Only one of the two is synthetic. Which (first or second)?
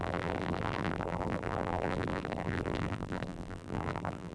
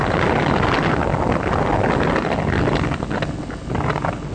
first